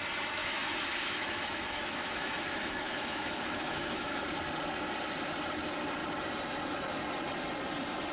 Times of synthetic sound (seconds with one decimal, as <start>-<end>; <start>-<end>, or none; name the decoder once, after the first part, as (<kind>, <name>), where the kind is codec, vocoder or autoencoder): 0.4-4.2 (autoencoder, DAC-VAE)